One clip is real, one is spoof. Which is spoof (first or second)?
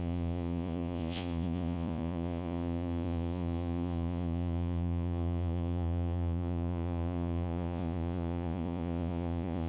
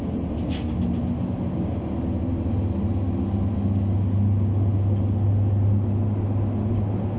first